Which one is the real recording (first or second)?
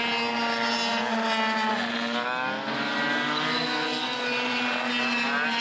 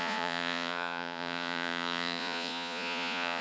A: first